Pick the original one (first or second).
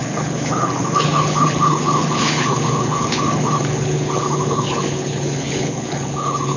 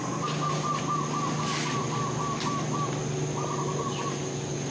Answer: second